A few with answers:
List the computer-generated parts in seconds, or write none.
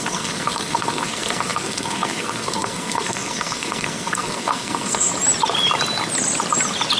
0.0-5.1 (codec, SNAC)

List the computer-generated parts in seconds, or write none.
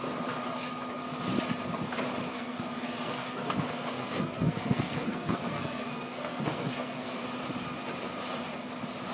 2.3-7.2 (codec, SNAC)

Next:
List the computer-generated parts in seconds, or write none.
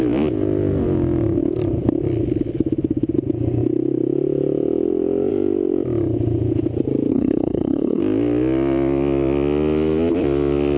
7.1-8.0 (codec, SNAC)